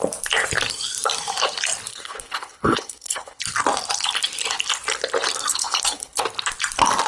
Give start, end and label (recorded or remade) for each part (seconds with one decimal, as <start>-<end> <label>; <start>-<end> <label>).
0.0-1.9 recorded; 1.9-3.4 remade; 3.4-5.5 recorded; 5.5-6.2 remade; 6.2-7.1 recorded